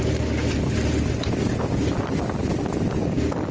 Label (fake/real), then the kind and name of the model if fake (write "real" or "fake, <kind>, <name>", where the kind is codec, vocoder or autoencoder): real